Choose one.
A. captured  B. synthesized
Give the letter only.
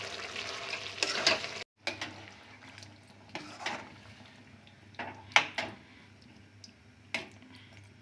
A